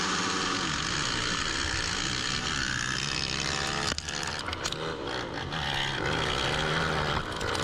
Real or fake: real